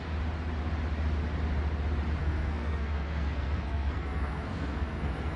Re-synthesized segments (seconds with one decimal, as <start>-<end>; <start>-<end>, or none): 2.2-5.4